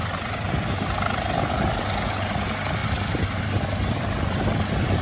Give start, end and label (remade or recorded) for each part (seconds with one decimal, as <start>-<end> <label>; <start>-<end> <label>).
0.0-0.5 remade; 0.5-2.8 recorded; 2.8-5.0 remade